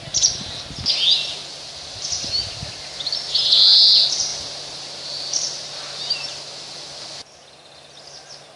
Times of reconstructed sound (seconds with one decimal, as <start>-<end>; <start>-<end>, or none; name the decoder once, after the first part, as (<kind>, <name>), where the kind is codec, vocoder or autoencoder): none